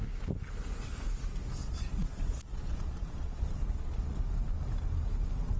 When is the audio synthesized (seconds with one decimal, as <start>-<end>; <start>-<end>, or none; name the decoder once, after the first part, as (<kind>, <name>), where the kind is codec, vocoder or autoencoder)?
1.6-4.2 (vocoder, Vocos)